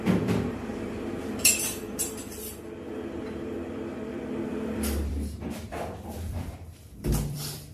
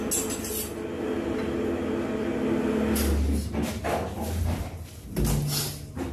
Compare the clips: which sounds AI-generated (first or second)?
first